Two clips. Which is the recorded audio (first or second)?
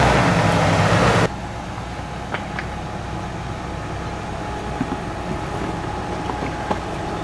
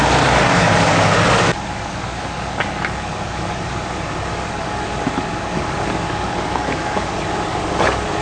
first